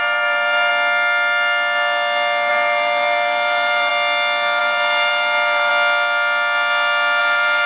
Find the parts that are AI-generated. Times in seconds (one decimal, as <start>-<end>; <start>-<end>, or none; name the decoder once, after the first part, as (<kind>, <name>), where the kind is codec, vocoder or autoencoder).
0.0-0.7 (vocoder, BigVGAN v2); 2.5-3.9; 4.6-5.7; 7.2-7.7